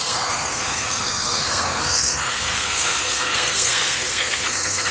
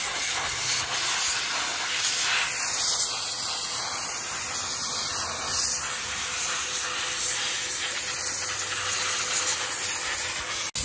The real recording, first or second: second